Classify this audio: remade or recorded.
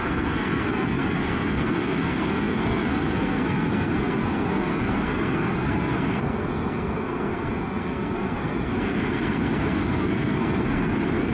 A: remade